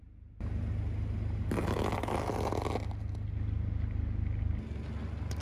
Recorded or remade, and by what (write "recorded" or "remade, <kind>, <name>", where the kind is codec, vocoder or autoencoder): recorded